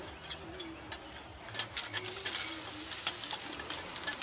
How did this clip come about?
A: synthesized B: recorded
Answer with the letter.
B